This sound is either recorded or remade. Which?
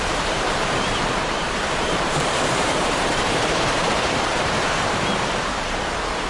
remade